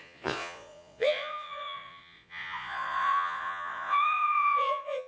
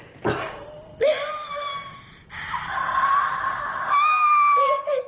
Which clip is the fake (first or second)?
first